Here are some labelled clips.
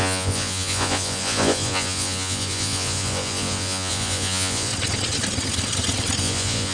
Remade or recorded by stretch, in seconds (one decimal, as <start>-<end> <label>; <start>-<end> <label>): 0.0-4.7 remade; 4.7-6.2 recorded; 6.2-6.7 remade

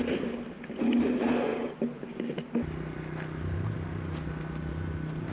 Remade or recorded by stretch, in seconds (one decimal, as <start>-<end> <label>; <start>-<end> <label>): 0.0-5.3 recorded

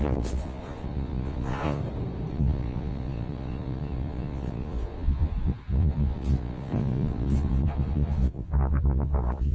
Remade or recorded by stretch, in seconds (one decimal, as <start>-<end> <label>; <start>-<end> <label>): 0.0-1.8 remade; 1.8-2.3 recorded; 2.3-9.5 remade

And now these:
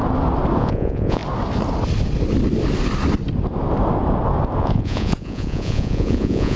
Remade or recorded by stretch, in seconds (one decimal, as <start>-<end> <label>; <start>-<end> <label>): 0.0-0.6 recorded; 0.6-1.2 remade; 1.2-4.6 recorded; 4.6-6.6 remade

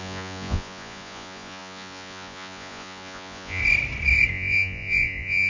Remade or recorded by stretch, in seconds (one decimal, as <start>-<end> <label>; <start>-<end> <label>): 0.0-3.6 remade; 3.6-4.3 recorded; 4.3-5.5 remade

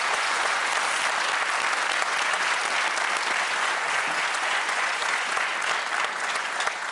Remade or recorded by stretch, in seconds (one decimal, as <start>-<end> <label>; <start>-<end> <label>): 0.0-0.7 remade; 0.7-2.0 recorded; 2.0-2.6 remade; 2.6-3.4 recorded; 3.4-5.5 remade; 5.5-6.1 recorded; 6.1-6.9 remade

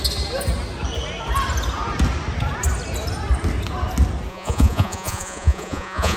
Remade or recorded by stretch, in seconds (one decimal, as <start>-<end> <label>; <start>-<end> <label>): 0.0-4.3 recorded; 4.3-6.2 remade